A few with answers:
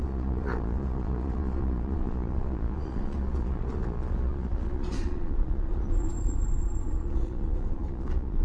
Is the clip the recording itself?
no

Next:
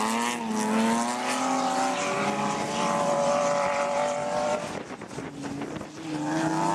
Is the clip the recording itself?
yes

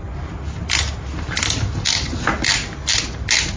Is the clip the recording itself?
yes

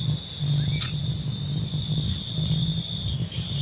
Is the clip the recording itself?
yes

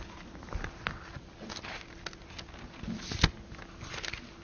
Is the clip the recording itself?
yes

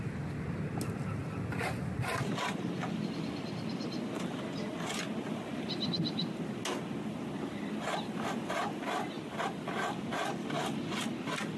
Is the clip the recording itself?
yes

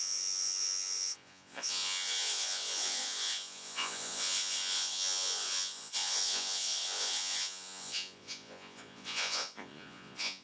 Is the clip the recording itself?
no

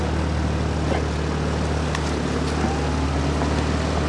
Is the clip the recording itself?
yes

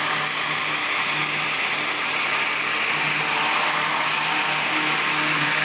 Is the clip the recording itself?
yes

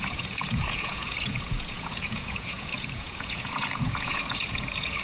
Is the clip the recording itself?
no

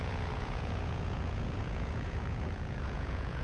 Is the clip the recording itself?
no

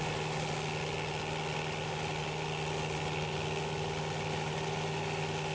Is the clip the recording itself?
yes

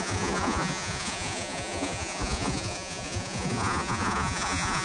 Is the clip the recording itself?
no